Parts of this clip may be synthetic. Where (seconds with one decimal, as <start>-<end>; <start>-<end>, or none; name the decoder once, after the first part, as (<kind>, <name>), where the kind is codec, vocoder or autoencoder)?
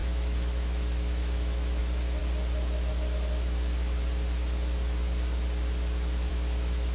0.0-2.2 (autoencoder, DAC-VAE); 6.3-6.9